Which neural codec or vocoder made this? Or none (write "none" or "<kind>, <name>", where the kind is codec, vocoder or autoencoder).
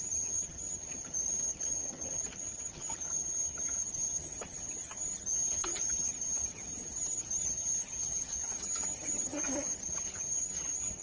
vocoder, HiFi-GAN